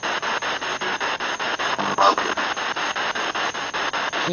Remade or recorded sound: recorded